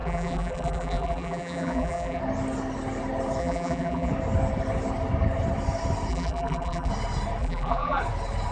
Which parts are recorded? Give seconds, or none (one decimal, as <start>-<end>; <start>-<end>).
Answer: 2.2-3.4; 4.1-6.1; 6.9-7.4; 8.0-8.5